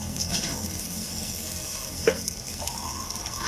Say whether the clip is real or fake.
fake